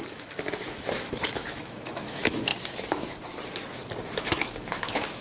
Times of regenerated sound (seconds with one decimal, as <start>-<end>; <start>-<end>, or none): 0.0-2.5; 4.1-5.2